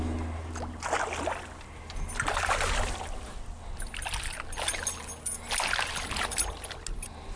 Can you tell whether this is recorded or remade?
recorded